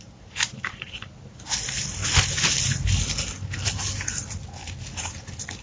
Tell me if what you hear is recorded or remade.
recorded